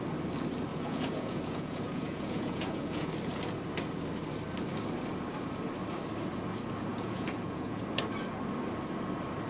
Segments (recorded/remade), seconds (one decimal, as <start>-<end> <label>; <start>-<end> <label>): 0.0-0.7 recorded; 0.7-3.1 remade; 3.1-6.9 recorded; 6.9-7.8 remade; 7.8-9.5 recorded